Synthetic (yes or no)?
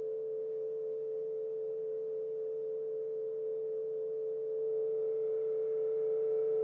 no